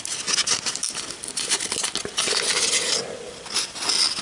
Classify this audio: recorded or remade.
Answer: recorded